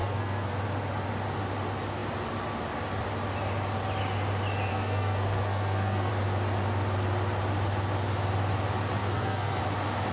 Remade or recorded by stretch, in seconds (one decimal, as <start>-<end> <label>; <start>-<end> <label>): 0.0-0.5 remade; 0.5-4.7 recorded; 4.7-6.1 remade; 6.1-9.0 recorded; 9.0-9.6 remade; 9.6-10.1 recorded